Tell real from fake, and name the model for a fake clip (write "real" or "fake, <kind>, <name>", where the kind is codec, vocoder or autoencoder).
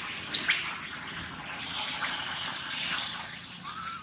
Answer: real